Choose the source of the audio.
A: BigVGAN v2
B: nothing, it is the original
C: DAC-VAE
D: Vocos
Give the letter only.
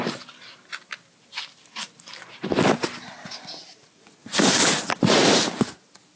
B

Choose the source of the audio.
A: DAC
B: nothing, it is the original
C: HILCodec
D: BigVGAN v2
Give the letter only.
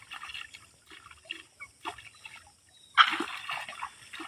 B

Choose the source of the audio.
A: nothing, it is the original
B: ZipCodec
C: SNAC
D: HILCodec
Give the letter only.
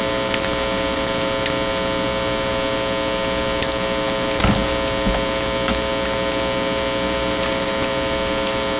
A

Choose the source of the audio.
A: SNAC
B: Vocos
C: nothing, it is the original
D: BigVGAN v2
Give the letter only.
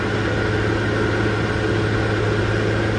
C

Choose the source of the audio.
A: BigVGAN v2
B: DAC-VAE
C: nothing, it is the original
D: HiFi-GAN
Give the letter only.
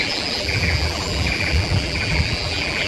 A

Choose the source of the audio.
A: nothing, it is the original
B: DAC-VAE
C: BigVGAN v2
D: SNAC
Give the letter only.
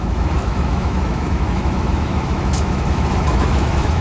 B